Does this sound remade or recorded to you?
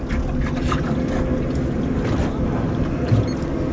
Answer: recorded